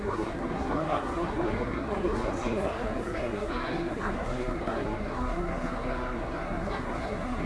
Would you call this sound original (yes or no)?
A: no